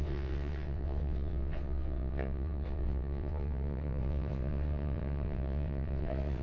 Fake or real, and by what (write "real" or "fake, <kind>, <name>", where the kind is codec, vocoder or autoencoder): fake, vocoder, WaveNeXt